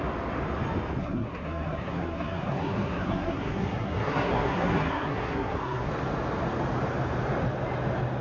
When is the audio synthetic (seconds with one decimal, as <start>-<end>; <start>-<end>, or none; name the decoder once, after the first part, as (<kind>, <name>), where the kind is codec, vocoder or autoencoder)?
1.0-5.9 (codec, SNAC)